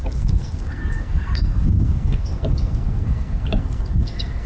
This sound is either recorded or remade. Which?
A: remade